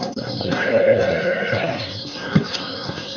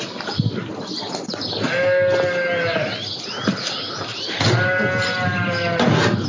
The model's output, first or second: first